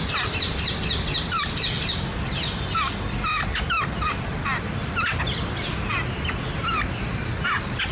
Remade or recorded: recorded